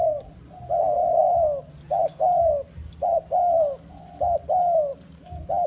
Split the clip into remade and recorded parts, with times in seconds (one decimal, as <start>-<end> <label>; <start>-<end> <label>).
0.0-5.7 recorded